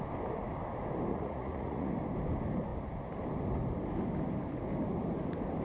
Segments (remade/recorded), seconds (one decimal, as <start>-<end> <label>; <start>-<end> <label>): 0.0-1.1 recorded; 1.1-1.9 remade; 1.9-5.6 recorded